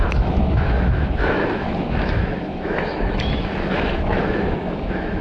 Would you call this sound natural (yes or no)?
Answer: no